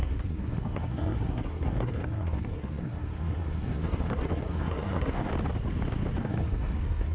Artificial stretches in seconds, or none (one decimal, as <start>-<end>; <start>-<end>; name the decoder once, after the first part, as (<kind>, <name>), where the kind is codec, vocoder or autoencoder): 0.0-5.3 (codec, SNAC); 6.2-7.1